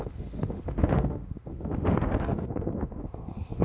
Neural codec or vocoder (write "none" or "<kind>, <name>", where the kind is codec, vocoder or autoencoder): autoencoder, DAC-VAE